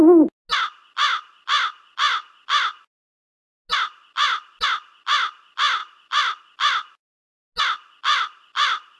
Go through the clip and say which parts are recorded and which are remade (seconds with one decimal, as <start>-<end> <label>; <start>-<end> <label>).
0.0-5.8 recorded; 5.8-6.4 remade; 6.4-8.1 recorded; 8.1-9.0 remade